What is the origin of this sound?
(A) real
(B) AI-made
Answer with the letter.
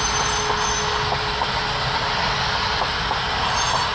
A